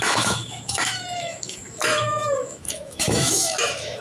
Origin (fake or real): fake